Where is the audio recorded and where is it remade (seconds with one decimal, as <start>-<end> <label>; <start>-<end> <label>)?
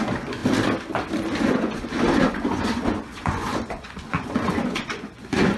0.0-0.4 remade; 0.4-1.4 recorded; 1.4-5.6 remade